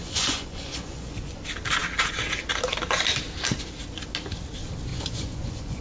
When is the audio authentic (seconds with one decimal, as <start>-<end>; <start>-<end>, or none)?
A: 1.4-4.9